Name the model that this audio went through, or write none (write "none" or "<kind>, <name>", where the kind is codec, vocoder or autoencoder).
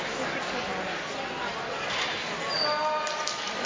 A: none